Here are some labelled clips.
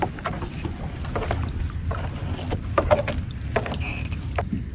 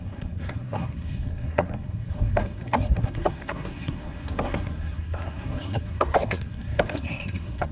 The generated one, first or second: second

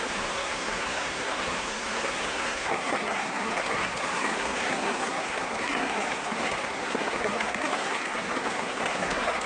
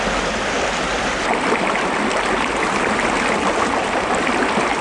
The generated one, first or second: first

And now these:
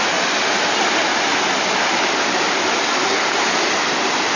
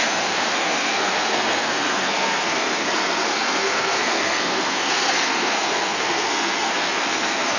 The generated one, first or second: second